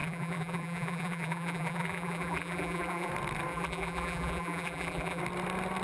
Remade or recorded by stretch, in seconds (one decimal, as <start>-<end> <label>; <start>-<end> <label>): 0.0-3.1 remade; 3.1-3.5 recorded; 3.5-5.2 remade; 5.2-5.8 recorded